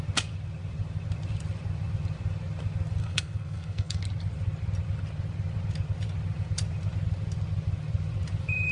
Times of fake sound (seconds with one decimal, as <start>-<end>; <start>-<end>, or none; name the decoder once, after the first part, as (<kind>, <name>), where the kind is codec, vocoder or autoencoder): 3.0-4.0 (codec, SNAC)